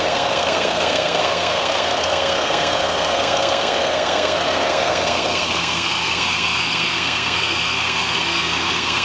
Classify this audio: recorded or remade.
remade